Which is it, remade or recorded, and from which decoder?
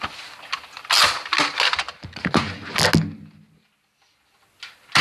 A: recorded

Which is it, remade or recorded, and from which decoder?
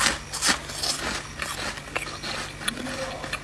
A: recorded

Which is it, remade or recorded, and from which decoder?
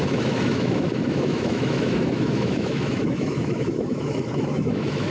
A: remade, autoencoder, DAC-VAE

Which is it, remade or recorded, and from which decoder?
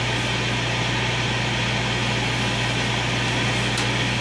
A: recorded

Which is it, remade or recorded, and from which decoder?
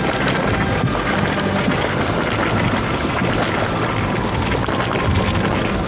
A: recorded